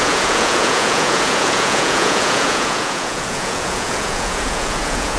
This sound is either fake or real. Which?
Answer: fake